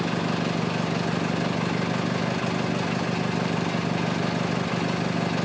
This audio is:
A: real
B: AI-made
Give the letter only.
A